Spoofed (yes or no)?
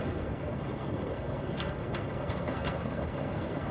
yes